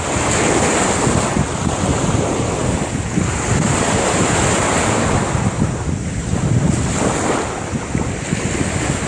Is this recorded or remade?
recorded